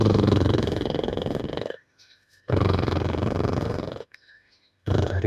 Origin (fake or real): fake